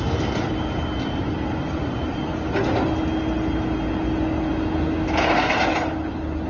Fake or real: real